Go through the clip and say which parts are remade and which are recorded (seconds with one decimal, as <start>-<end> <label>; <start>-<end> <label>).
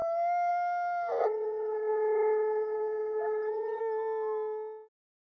0.0-1.2 recorded; 1.2-3.8 remade; 3.8-5.3 recorded